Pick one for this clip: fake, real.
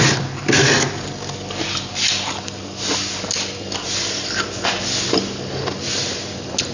real